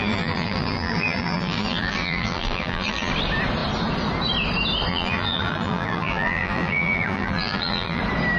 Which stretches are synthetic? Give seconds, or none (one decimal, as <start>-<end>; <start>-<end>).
0.0-3.1; 4.9-8.0